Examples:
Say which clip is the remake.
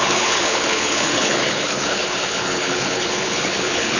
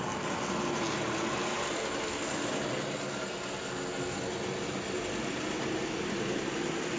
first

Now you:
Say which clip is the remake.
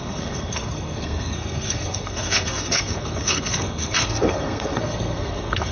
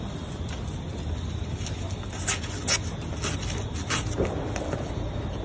first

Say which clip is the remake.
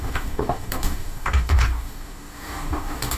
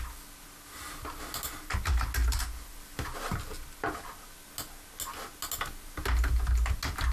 first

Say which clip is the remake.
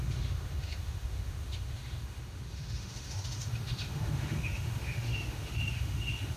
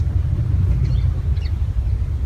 first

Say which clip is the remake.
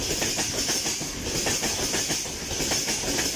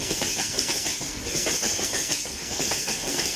second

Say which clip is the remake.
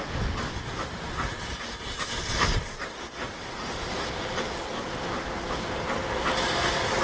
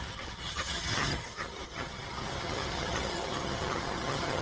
second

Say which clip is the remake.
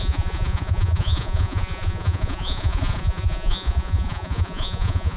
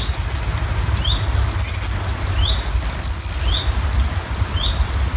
first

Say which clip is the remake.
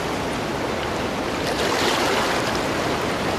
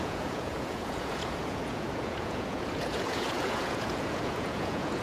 second